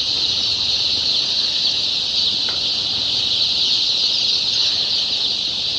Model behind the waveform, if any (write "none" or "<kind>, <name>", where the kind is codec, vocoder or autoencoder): none